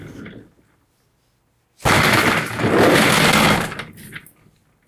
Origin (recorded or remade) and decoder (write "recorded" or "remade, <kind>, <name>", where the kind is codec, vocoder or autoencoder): recorded